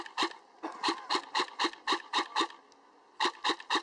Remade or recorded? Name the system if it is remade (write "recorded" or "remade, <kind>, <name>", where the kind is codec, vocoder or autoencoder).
recorded